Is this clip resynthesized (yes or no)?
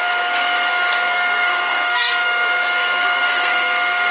yes